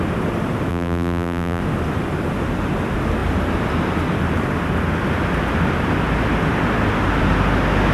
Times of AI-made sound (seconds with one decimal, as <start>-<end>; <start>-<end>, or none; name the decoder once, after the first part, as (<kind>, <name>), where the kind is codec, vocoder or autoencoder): 0.7-1.6 (vocoder, BigVGAN v2)